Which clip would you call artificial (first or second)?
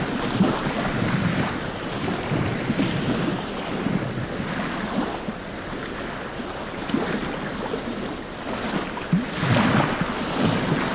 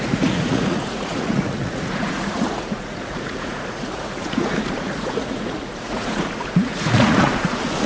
second